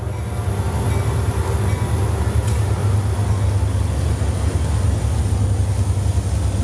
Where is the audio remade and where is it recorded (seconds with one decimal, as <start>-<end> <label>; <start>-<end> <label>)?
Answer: 0.0-6.6 recorded